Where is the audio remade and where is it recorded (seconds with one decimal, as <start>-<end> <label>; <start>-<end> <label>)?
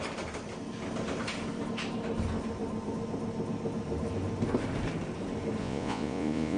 0.0-5.6 recorded; 5.6-6.6 remade